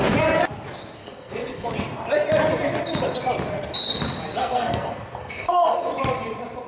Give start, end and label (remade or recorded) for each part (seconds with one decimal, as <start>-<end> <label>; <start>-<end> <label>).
0.0-1.0 recorded; 1.0-1.7 remade; 1.7-4.4 recorded; 4.4-5.9 remade; 5.9-6.7 recorded